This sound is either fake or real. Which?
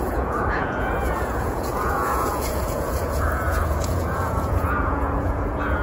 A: fake